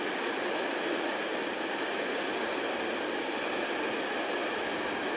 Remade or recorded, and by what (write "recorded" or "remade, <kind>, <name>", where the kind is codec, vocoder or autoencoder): recorded